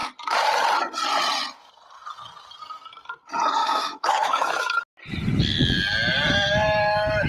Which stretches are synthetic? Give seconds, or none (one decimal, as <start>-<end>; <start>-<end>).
3.6-4.8